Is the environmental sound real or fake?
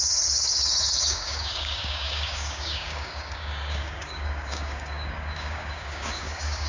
fake